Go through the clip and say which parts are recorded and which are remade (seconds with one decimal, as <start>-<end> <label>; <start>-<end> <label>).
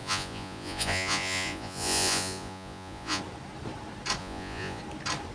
0.0-3.2 remade; 3.2-4.2 recorded; 4.2-4.8 remade; 4.8-5.3 recorded